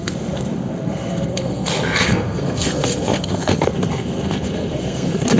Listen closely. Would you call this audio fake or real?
fake